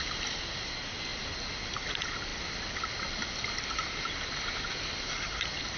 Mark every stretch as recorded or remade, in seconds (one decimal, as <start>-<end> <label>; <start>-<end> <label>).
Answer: 0.0-5.8 recorded